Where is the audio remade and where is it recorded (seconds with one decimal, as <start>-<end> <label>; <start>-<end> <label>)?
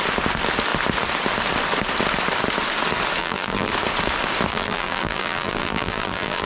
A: 0.0-3.2 recorded; 3.2-3.7 remade; 3.7-4.5 recorded; 4.5-6.5 remade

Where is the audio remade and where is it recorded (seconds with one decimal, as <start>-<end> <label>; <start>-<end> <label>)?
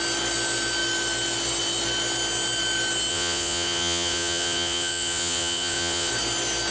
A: 0.0-3.1 recorded; 3.1-6.1 remade; 6.1-6.7 recorded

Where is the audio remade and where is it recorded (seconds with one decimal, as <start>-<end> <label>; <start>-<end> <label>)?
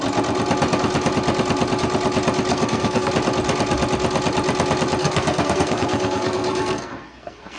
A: 0.0-2.5 recorded; 2.5-3.1 remade; 3.1-5.0 recorded; 5.0-7.6 remade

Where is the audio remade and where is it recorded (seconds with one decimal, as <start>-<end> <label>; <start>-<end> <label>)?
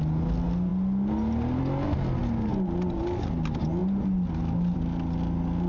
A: 0.0-5.7 recorded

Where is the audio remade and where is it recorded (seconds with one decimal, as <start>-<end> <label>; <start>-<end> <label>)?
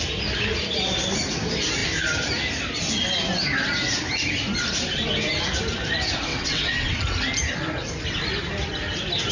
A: 0.0-6.3 recorded; 6.3-7.0 remade; 7.0-9.3 recorded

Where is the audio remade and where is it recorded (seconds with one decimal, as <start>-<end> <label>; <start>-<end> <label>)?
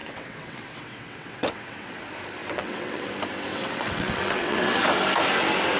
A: 0.0-2.0 remade; 2.0-2.4 recorded; 2.4-3.1 remade; 3.1-3.5 recorded; 3.5-4.8 remade; 4.8-5.8 recorded